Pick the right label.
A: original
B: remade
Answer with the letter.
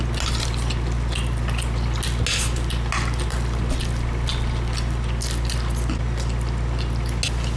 A